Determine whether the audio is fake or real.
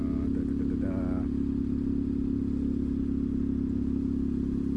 real